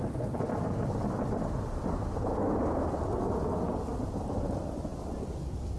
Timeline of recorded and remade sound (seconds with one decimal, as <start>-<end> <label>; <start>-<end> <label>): 0.0-5.8 recorded